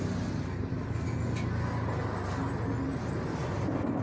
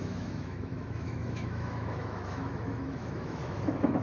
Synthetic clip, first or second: second